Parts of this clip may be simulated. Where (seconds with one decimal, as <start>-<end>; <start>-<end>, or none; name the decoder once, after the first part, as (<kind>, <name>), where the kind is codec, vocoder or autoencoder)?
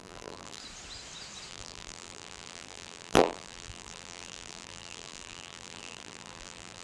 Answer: 0.0-0.6 (vocoder, BigVGAN v2); 1.5-6.8